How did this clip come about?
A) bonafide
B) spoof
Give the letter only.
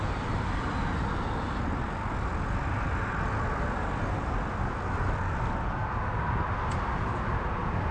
A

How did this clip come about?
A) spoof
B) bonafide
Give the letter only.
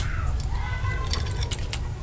B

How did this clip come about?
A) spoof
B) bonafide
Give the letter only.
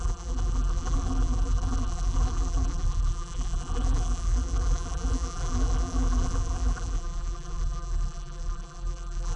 A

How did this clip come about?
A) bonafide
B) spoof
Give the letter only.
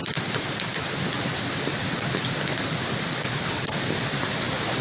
A